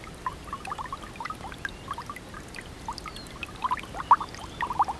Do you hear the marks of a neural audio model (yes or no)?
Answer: no